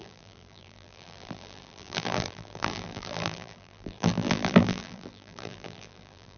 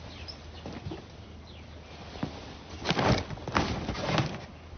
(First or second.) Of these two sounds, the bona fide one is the second